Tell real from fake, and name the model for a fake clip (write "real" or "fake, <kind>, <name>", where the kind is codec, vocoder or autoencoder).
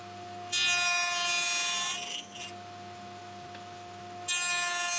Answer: real